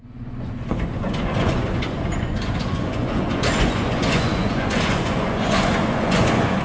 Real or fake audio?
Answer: fake